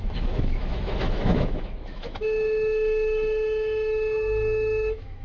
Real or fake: fake